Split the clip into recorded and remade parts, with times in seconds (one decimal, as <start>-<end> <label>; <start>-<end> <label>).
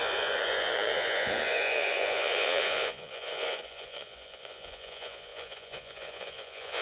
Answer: 0.0-6.8 remade